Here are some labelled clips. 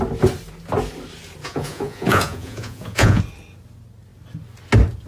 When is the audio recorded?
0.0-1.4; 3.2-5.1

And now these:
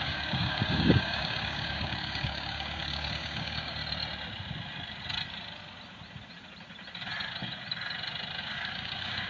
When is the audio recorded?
3.8-8.4

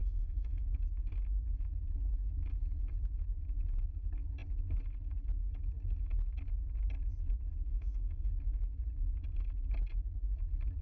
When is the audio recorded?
0.6-7.7; 8.3-10.8

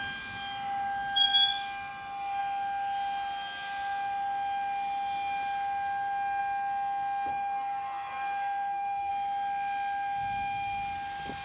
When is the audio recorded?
0.0-7.3; 9.1-11.4

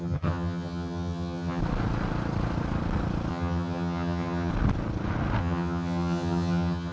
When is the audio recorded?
1.6-3.3; 4.5-5.4

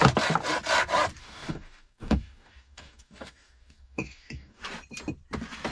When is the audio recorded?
0.0-1.2; 4.6-5.7

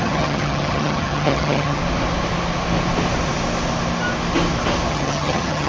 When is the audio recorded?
1.8-4.9